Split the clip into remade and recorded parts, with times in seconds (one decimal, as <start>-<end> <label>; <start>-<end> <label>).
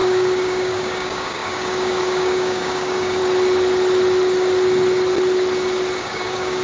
0.0-3.2 remade; 3.2-6.0 recorded; 6.0-6.6 remade